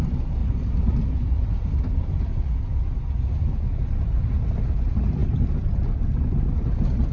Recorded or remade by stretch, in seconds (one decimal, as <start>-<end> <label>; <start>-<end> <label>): 0.0-0.4 recorded; 0.4-2.3 remade; 2.3-3.8 recorded; 3.8-4.3 remade; 4.3-5.2 recorded; 5.2-7.1 remade